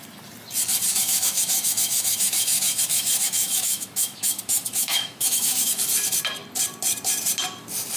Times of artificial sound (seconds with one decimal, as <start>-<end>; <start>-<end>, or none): 0.9-5.7